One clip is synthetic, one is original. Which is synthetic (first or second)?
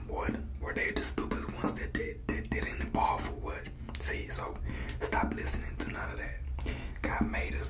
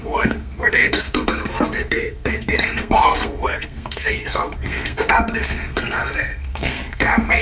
second